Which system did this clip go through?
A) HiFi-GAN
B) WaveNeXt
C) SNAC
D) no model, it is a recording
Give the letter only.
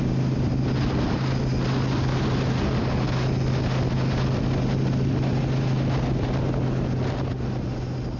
D